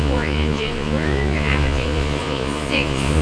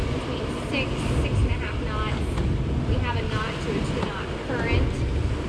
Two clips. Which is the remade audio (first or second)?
first